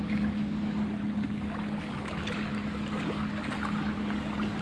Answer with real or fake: fake